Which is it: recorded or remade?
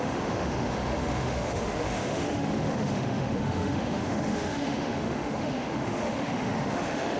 remade